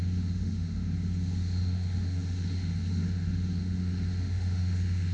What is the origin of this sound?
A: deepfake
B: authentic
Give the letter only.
A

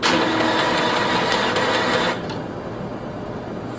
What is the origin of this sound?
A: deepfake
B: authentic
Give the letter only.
B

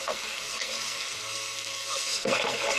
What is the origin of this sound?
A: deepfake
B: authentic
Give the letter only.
A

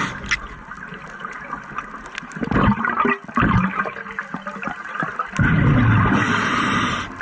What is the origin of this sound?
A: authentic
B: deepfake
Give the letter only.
A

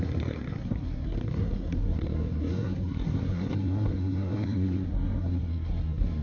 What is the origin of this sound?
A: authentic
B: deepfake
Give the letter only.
B